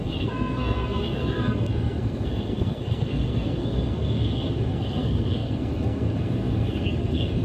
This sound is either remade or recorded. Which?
remade